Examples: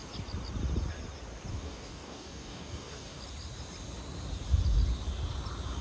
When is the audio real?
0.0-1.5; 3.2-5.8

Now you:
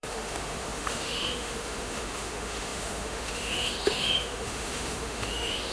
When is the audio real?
none

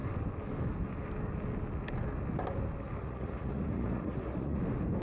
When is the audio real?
0.0-3.0; 4.6-5.0

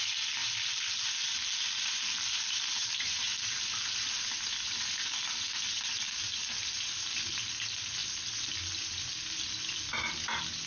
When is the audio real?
0.0-0.4; 4.2-10.7

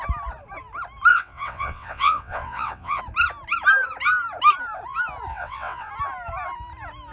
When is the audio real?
0.0-1.1; 3.0-5.3; 5.9-7.1

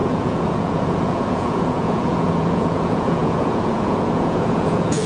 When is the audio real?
none